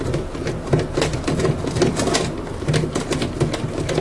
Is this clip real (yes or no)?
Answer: yes